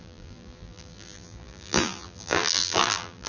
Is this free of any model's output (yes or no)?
no